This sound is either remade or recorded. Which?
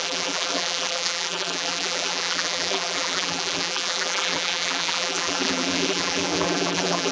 remade